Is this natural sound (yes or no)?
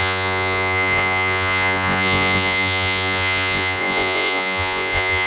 no